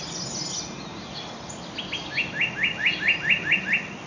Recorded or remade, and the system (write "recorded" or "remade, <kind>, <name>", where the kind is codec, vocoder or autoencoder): recorded